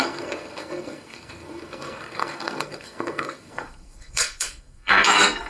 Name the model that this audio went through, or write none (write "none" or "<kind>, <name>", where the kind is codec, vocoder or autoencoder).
codec, SNAC